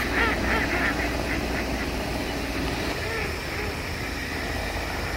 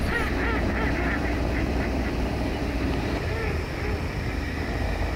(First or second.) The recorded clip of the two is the first